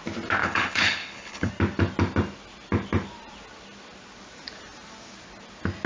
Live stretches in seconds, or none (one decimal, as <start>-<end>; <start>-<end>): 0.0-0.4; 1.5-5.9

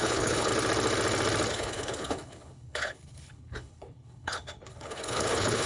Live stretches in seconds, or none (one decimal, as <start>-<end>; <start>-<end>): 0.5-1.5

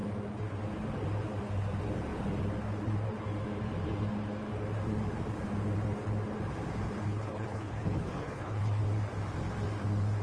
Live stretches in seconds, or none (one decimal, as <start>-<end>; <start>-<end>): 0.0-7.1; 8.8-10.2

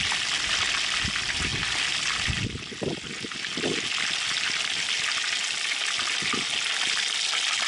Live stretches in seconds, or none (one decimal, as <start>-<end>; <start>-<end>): 0.0-7.7

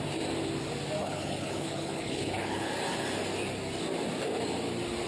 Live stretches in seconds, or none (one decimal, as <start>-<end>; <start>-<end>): 0.0-1.0; 2.7-5.1

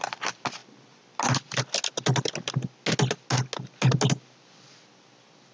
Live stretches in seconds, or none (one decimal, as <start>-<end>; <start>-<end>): 0.0-5.5

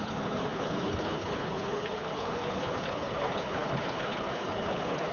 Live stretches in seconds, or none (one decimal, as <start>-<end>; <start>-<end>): none

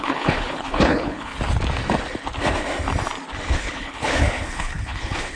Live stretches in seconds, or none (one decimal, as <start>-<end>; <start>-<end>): 1.3-3.5